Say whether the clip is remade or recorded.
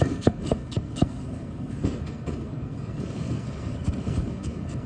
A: remade